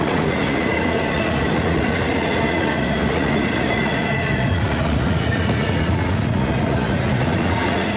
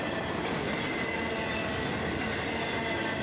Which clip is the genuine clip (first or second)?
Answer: second